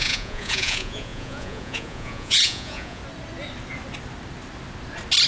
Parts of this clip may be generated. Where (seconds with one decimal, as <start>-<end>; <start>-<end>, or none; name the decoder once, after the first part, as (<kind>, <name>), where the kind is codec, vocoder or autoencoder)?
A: 0.0-3.0 (vocoder, Vocos)